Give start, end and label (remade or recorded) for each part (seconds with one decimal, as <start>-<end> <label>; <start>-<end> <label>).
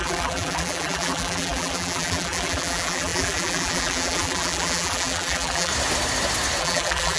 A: 0.0-5.7 remade; 5.7-6.6 recorded; 6.6-7.2 remade